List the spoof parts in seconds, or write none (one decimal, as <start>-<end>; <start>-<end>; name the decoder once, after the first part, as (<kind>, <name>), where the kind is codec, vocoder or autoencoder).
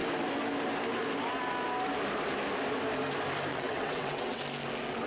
3.5-4.4 (vocoder, WaveNeXt)